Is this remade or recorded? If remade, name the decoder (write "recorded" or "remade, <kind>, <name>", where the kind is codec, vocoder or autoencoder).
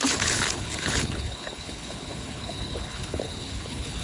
remade, codec, HILCodec